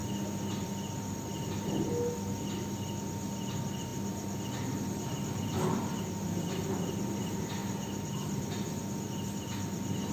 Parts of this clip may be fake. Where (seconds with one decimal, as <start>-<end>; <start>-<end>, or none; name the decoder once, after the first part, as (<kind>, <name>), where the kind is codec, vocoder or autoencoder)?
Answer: none